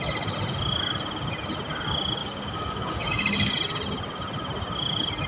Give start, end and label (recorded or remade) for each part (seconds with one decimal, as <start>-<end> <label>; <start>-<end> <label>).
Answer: 0.0-2.2 recorded; 2.2-3.5 remade; 3.5-5.3 recorded